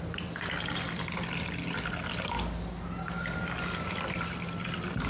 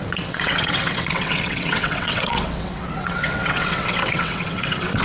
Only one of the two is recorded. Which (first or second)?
first